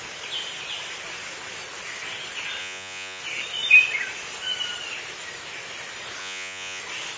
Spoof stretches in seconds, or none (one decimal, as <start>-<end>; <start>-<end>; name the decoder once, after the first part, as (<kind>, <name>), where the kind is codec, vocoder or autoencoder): 2.6-3.2 (vocoder, Vocos); 6.2-6.8